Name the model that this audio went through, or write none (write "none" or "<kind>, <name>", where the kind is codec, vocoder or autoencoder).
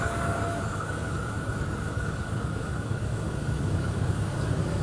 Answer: codec, DAC